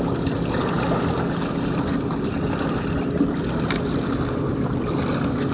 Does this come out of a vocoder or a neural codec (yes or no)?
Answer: no